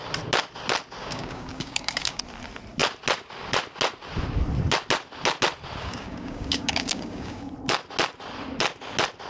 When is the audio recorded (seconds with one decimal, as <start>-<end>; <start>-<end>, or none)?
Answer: 0.0-1.0; 2.2-5.8; 7.5-9.3